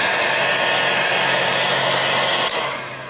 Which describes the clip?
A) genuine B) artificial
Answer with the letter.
A